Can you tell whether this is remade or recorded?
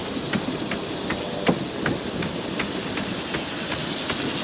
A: recorded